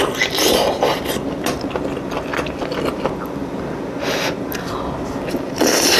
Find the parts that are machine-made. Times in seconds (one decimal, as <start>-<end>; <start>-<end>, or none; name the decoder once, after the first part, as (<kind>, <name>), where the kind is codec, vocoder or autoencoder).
none